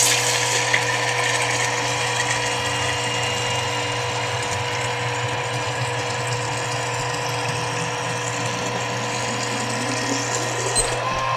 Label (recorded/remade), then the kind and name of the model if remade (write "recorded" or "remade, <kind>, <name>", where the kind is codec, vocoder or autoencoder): recorded